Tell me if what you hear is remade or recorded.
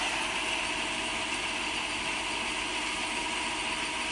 recorded